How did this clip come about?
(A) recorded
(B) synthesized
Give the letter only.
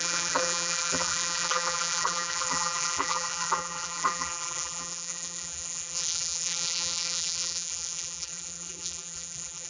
B